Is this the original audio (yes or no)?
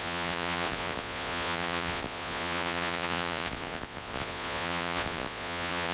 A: no